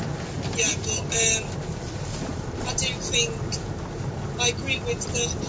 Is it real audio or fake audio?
real